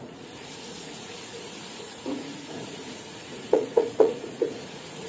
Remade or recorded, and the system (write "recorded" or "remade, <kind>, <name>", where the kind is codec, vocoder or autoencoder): remade, vocoder, Vocos